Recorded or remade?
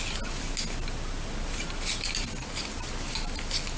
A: recorded